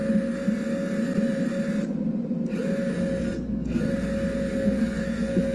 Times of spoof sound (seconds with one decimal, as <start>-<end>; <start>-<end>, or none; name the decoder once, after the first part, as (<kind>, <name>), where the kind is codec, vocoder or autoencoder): 3.2-3.9 (codec, SNAC); 4.5-5.5